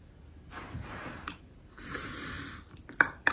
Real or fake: real